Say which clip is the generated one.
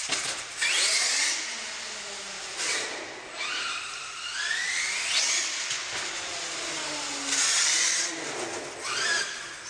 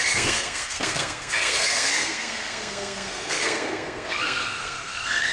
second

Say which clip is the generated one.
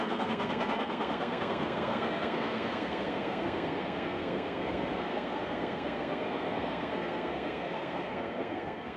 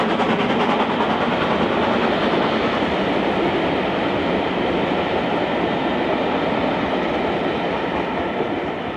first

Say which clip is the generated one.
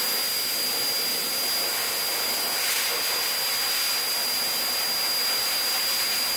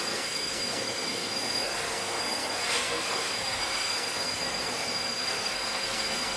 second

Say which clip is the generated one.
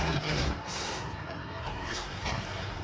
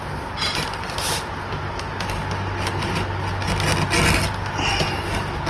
first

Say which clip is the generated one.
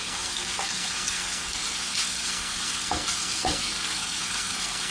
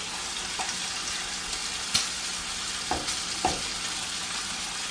first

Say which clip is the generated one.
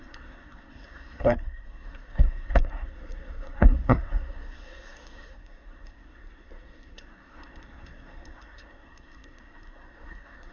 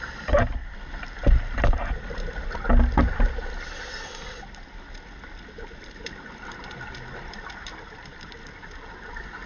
first